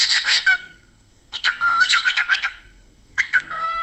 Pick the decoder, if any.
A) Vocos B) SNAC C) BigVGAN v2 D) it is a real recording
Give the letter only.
B